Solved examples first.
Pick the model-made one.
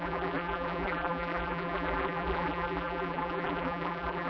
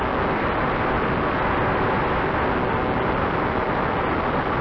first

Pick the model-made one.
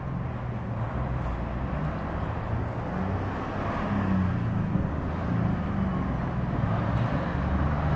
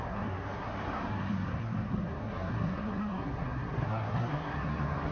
second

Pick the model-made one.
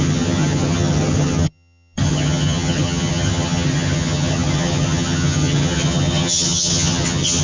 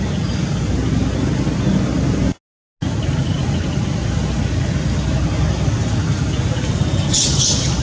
first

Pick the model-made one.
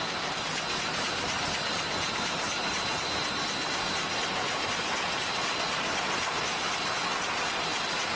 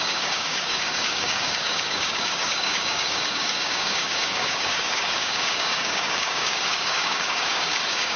second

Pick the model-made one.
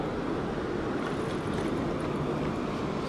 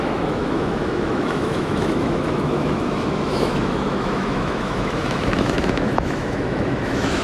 second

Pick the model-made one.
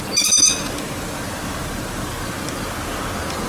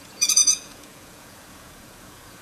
second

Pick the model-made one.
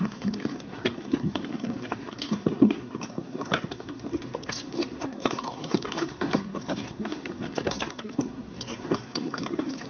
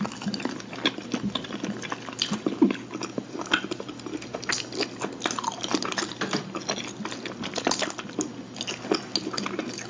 first